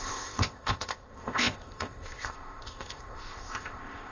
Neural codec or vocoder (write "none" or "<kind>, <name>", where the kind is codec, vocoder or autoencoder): codec, ZipCodec